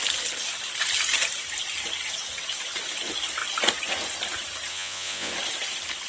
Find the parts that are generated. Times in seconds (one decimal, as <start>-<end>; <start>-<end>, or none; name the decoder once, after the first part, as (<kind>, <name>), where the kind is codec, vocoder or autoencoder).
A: 4.7-5.3 (vocoder, Vocos)

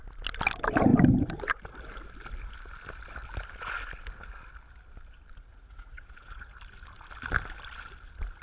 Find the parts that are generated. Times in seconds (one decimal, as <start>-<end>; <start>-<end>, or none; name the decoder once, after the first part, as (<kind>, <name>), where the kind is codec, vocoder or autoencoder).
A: 5.5-6.5 (vocoder, Vocos)

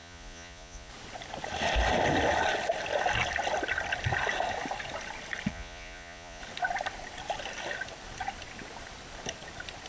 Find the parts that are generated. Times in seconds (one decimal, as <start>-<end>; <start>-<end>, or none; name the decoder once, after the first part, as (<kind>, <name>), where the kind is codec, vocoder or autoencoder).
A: 0.0-0.9 (vocoder, Vocos); 5.5-6.4

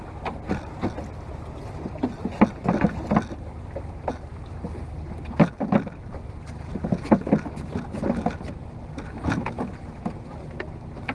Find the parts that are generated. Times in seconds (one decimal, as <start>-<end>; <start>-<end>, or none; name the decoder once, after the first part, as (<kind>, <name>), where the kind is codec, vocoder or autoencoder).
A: none

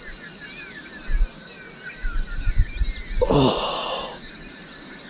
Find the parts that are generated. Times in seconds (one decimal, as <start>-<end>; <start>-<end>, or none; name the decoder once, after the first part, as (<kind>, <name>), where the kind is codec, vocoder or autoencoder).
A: none

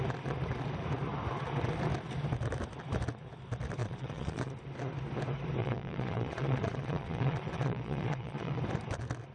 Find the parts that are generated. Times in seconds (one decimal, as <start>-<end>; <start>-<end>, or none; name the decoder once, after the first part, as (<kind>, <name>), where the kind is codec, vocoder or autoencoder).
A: 3.8-4.5 (vocoder, Vocos); 5.6-8.6

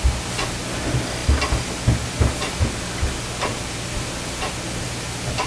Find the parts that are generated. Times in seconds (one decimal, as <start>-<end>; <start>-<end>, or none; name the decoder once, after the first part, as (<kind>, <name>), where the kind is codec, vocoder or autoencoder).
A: none